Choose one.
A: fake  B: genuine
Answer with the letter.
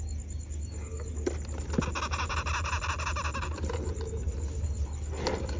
B